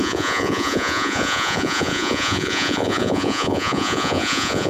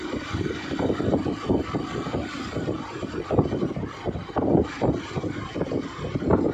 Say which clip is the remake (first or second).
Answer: first